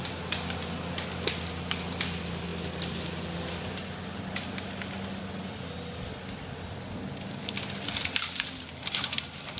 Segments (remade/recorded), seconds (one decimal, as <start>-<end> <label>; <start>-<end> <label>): 0.0-9.6 recorded

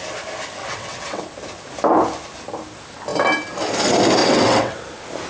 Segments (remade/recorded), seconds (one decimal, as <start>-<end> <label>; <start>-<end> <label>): 0.0-0.6 recorded; 0.6-1.2 remade; 1.2-4.2 recorded; 4.2-4.8 remade; 4.8-5.3 recorded

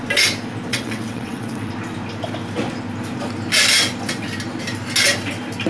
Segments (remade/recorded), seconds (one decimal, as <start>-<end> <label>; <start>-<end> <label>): 0.0-0.7 recorded; 0.7-1.7 remade; 1.7-5.7 recorded